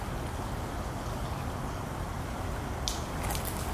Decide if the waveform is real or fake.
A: real